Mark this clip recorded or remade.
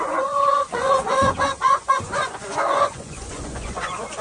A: remade